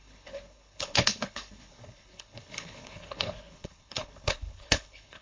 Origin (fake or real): fake